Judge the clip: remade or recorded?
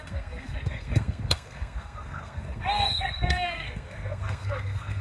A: remade